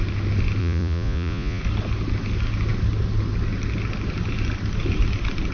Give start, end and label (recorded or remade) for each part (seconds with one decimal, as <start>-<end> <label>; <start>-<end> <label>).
0.0-0.6 recorded; 0.6-1.6 remade; 1.6-5.5 recorded